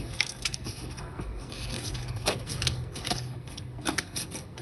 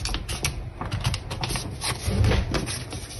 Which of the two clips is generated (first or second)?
first